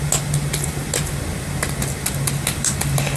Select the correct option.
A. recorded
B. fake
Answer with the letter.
A